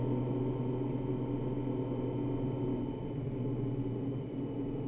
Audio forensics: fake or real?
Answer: real